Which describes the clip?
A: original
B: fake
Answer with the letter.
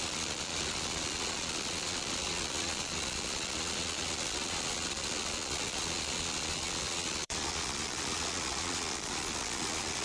B